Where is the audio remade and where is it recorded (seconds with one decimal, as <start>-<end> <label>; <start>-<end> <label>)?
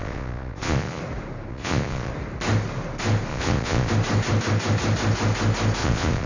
0.0-1.0 remade; 1.0-1.5 recorded; 1.5-2.1 remade; 2.1-3.3 recorded; 3.3-3.9 remade; 3.9-5.8 recorded; 5.8-6.3 remade